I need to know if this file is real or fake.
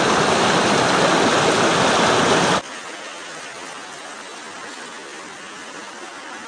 real